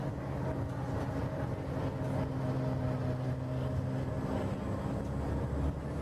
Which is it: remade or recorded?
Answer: recorded